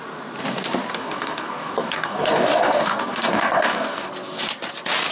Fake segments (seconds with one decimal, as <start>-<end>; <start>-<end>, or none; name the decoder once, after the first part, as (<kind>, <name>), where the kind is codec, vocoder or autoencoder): 1.0-4.1 (codec, DAC)